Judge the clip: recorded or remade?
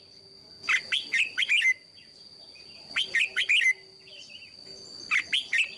recorded